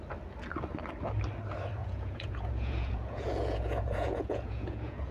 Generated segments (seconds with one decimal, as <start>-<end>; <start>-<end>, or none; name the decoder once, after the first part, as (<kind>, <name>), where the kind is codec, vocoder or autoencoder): 1.8-5.1 (vocoder, Vocos)